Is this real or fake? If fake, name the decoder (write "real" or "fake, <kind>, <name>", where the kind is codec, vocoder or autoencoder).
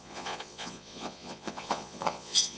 fake, vocoder, Vocos